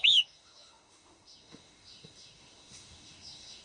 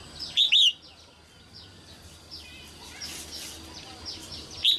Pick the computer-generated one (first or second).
first